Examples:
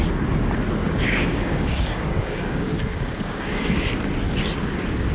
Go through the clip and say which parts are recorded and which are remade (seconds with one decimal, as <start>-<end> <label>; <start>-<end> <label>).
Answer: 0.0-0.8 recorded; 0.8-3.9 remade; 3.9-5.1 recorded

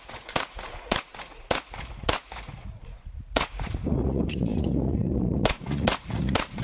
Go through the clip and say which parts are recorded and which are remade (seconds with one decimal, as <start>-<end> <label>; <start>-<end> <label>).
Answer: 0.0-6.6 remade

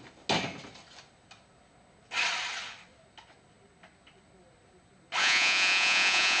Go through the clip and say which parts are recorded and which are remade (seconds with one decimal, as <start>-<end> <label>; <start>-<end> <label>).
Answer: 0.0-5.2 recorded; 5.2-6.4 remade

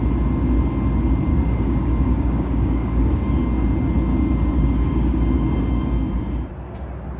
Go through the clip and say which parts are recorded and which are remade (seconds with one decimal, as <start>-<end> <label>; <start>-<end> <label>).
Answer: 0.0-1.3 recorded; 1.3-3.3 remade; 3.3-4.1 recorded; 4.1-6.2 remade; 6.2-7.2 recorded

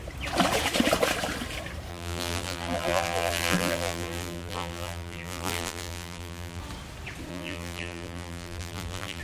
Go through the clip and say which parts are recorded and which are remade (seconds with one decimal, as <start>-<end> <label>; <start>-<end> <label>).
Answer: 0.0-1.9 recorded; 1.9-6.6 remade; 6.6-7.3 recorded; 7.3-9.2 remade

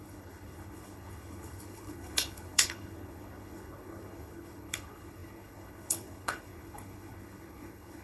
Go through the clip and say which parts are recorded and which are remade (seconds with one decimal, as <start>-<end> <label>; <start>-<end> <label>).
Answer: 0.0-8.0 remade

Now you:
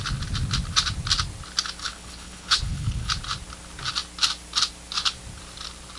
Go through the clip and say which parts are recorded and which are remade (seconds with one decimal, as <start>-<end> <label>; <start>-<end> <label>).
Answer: 0.0-1.8 recorded; 1.8-3.1 remade; 3.1-6.0 recorded

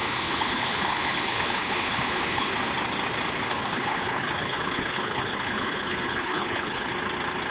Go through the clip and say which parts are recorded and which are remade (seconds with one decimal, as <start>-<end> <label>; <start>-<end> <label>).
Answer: 0.0-2.5 remade; 2.5-3.5 recorded; 3.5-6.9 remade; 6.9-7.5 recorded